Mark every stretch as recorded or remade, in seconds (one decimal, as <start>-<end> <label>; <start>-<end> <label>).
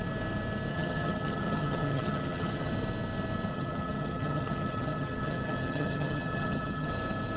0.0-0.7 recorded; 0.7-2.7 remade; 2.7-3.5 recorded; 3.5-6.9 remade; 6.9-7.4 recorded